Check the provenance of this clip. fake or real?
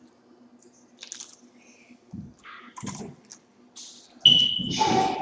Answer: real